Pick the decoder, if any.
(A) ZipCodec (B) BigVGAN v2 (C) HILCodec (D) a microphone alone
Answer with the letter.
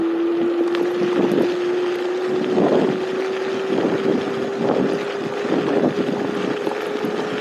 D